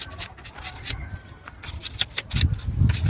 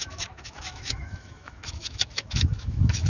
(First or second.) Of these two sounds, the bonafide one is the first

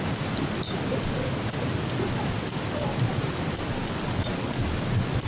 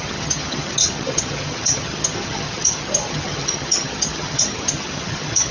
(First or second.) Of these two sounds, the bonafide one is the first